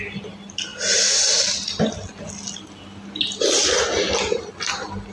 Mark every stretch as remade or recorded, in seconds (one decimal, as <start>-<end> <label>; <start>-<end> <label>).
0.0-5.1 recorded